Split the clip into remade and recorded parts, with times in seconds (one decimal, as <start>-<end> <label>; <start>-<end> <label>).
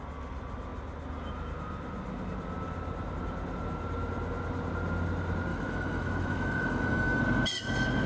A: 0.0-5.5 recorded; 5.5-7.2 remade; 7.2-8.1 recorded